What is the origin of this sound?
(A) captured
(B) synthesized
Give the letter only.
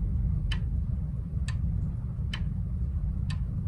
A